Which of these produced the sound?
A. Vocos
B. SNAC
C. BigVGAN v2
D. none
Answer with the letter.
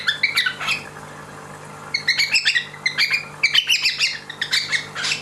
D